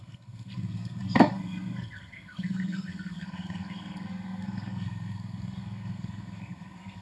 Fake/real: fake